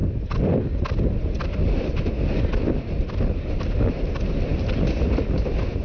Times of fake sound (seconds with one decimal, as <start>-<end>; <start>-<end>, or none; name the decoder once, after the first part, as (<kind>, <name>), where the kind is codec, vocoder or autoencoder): none